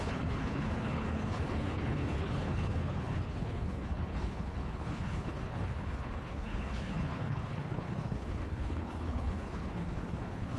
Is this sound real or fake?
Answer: fake